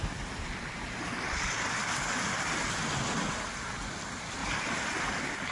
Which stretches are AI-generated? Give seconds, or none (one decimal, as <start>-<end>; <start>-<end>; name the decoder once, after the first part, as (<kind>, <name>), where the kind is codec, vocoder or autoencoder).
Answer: none